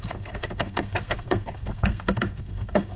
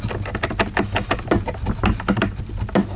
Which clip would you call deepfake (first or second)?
first